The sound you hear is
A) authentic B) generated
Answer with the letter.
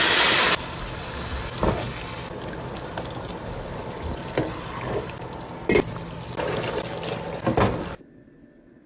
A